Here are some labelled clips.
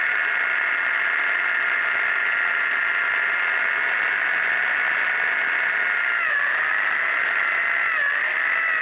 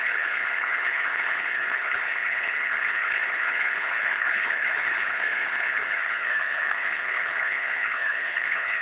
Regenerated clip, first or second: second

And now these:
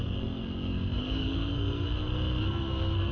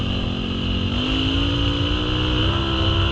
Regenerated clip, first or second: first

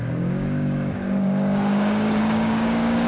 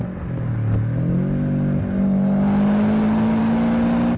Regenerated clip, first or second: first